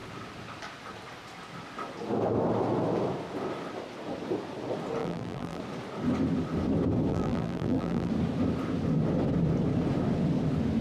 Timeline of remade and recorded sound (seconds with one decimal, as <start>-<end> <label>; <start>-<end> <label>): 0.0-5.0 recorded; 5.0-5.6 remade; 5.6-7.1 recorded; 7.1-8.1 remade; 8.1-10.8 recorded